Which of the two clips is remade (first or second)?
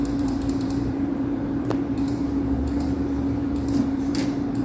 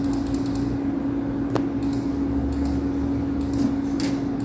first